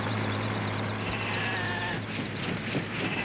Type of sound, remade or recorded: remade